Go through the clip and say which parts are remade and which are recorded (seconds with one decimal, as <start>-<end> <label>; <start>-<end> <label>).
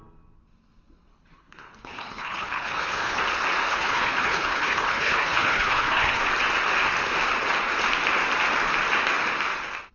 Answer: 0.0-1.1 recorded; 1.1-3.2 remade; 3.2-3.7 recorded; 3.7-6.2 remade; 6.2-9.9 recorded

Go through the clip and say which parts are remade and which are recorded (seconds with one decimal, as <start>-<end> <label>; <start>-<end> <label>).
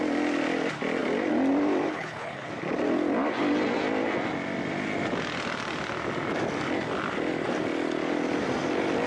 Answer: 0.0-1.9 recorded; 1.9-2.5 remade; 2.5-9.1 recorded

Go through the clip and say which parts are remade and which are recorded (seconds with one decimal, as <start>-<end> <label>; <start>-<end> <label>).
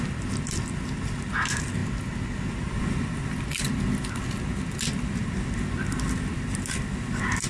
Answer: 0.0-7.5 recorded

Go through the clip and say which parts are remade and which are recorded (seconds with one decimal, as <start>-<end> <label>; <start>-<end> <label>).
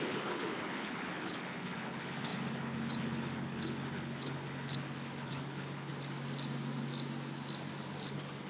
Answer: 0.0-5.9 remade; 5.9-8.1 recorded; 8.1-8.5 remade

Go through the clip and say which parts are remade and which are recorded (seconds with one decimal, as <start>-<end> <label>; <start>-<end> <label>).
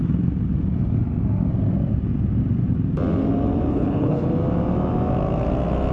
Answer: 0.0-3.7 recorded; 3.7-4.3 remade; 4.3-5.9 recorded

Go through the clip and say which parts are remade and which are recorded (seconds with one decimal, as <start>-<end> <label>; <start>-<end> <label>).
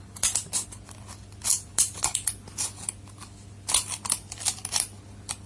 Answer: 0.0-5.5 recorded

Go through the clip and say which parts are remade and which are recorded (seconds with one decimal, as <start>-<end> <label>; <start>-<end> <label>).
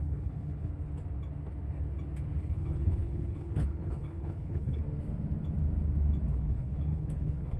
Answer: 0.0-0.7 remade; 0.7-2.4 recorded; 2.4-4.8 remade; 4.8-6.3 recorded; 6.3-7.6 remade